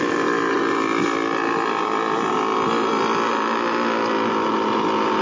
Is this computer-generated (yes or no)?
no